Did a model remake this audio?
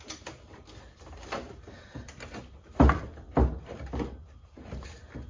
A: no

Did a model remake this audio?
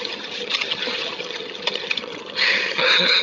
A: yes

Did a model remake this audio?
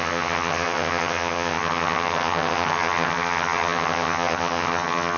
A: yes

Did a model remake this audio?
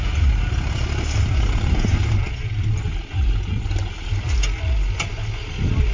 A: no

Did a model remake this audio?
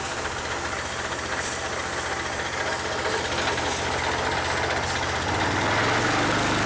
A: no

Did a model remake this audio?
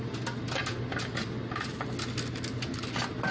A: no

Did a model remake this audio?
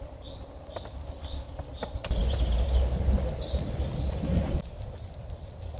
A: no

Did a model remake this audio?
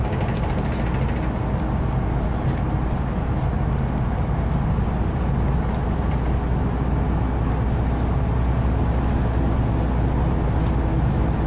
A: no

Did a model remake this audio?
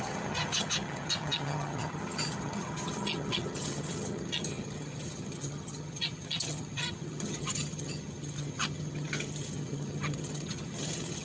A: yes